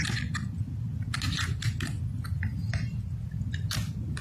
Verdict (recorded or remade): recorded